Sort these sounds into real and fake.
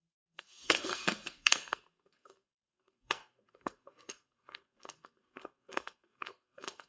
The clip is fake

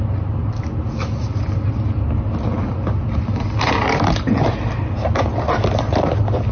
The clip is real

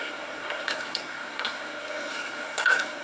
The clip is fake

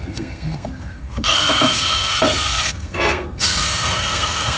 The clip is fake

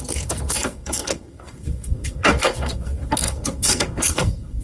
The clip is fake